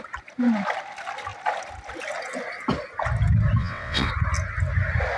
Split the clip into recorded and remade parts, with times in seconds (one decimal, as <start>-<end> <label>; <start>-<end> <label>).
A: 0.0-3.6 recorded; 3.6-4.1 remade; 4.1-5.2 recorded